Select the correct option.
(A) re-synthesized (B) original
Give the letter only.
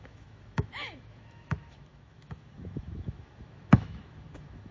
A